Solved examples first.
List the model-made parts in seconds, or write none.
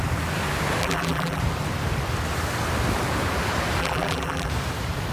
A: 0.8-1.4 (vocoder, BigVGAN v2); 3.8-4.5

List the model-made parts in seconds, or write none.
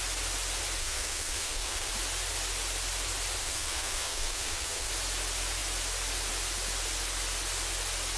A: 0.8-1.9 (codec, SNAC); 3.4-4.9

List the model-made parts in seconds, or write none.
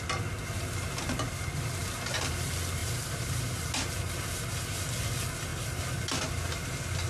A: 2.8-3.6 (vocoder, BigVGAN v2)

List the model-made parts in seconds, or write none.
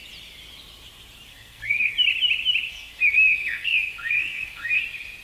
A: 1.3-1.9 (codec, SNAC); 2.7-4.8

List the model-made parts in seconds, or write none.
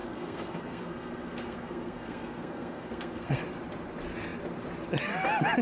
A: 0.0-3.4 (codec, SNAC)